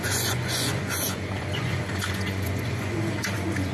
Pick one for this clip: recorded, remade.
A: remade